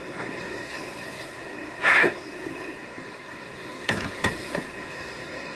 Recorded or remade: remade